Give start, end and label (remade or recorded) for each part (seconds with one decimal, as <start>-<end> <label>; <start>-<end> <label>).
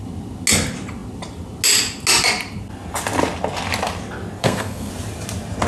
0.0-4.4 recorded; 4.4-4.9 remade; 4.9-5.7 recorded